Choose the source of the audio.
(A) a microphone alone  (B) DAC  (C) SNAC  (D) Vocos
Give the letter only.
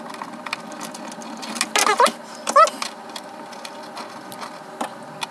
A